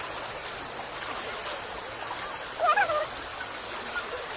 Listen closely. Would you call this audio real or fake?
real